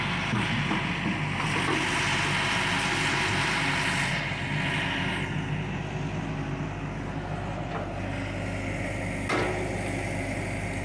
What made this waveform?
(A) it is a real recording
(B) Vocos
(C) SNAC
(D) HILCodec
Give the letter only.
A